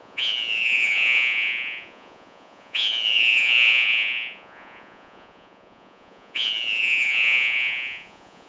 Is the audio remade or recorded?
remade